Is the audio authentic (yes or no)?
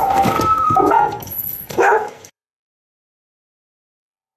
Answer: no